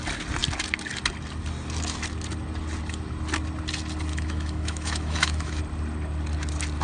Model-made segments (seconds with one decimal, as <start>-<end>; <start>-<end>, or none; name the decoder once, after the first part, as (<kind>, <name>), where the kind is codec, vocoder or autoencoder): 4.1-5.6 (autoencoder, DAC-VAE)